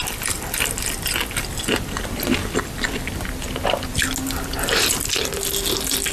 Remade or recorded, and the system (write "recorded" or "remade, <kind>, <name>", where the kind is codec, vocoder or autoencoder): recorded